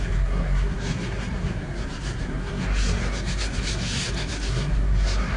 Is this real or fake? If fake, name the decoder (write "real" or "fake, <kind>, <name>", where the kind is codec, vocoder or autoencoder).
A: fake, codec, SNAC